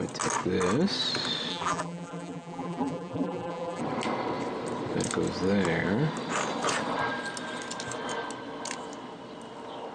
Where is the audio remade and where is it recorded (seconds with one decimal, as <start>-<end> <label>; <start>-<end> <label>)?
0.0-1.5 recorded; 1.5-3.8 remade; 3.8-9.9 recorded